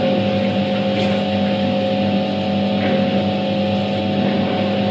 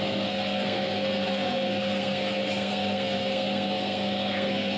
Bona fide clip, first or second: first